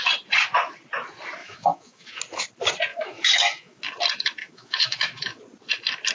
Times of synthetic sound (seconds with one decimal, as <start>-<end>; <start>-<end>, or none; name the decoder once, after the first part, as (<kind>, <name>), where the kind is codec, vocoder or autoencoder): 1.4-2.2 (autoencoder, DAC-VAE); 2.9-3.8; 4.4-5.4